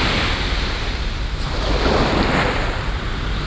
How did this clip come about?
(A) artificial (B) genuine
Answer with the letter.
B